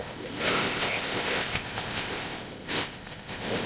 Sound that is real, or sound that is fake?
fake